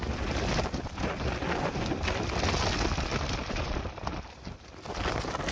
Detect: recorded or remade recorded